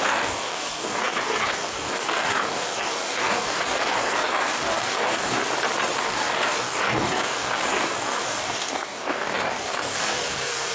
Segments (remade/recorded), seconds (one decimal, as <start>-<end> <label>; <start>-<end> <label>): 0.0-5.4 remade; 5.4-6.0 recorded; 6.0-10.7 remade